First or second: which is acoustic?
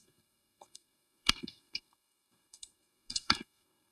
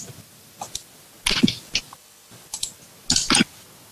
second